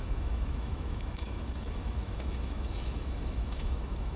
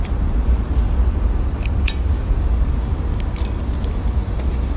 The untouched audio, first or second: second